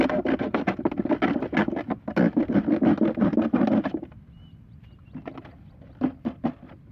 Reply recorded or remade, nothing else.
recorded